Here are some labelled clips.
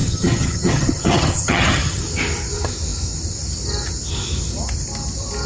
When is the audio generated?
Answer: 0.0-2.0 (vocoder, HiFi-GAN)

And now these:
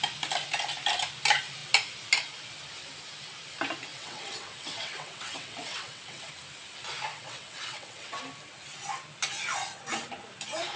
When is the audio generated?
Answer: 3.9-6.3 (vocoder, WaveNeXt); 7.1-8.2